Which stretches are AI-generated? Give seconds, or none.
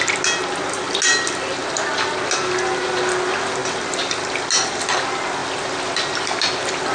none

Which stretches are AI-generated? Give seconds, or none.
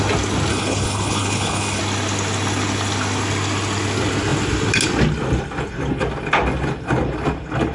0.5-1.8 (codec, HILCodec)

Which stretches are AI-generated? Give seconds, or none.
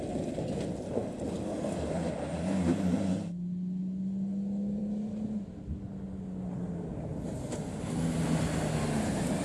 none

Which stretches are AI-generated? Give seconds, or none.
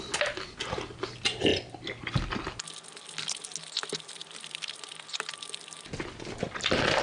none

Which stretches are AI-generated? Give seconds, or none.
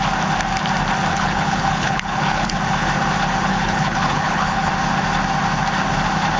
1.1-2.6 (codec, HILCodec); 3.5-4.7